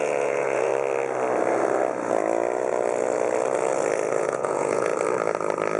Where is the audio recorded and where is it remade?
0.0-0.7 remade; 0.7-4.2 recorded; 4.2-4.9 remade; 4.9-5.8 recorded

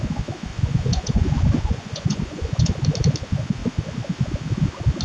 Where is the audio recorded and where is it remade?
0.0-0.5 recorded; 0.5-2.7 remade; 2.7-5.0 recorded

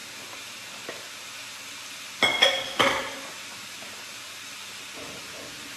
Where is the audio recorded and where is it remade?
0.0-5.8 recorded

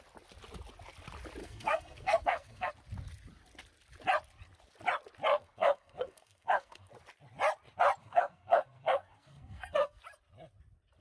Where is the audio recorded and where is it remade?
0.0-1.4 recorded; 1.4-2.7 remade; 2.7-5.3 recorded; 5.3-6.9 remade; 6.9-8.0 recorded; 8.0-10.0 remade; 10.0-11.0 recorded

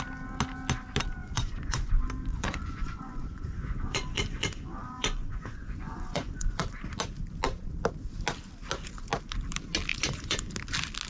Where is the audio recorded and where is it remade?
0.0-1.2 recorded; 1.2-1.9 remade; 1.9-2.3 recorded; 2.3-6.8 remade; 6.8-9.9 recorded; 9.9-10.5 remade; 10.5-11.1 recorded

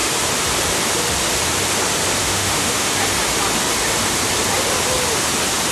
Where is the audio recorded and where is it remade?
0.0-2.2 recorded; 2.2-2.9 remade; 2.9-5.7 recorded